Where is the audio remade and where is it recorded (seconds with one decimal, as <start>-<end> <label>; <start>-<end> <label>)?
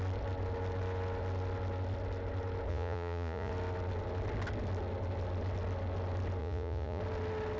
0.0-2.7 recorded; 2.7-3.5 remade; 3.5-6.4 recorded; 6.4-7.0 remade; 7.0-7.6 recorded